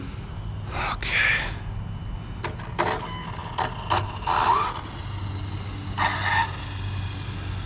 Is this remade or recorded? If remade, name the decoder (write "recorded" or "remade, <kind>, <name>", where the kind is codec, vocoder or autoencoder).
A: recorded